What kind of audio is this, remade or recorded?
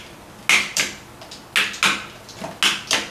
recorded